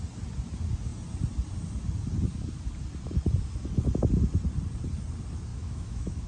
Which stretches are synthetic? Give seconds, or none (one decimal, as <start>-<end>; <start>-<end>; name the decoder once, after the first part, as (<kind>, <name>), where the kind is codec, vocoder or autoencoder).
5.5-6.3 (autoencoder, DAC-VAE)